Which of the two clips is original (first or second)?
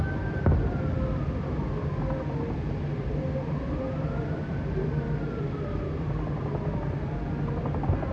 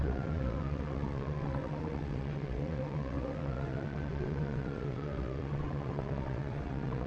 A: first